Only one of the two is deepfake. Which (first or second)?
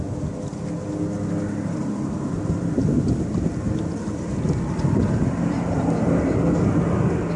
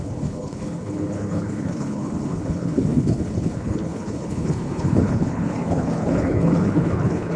second